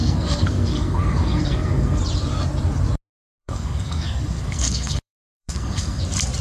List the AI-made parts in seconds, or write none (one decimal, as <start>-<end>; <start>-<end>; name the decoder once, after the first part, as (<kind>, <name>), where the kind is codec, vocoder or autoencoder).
0.0-2.0 (codec, SNAC); 3.4-6.0